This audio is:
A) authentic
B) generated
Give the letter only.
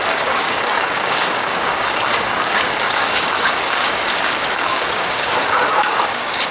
B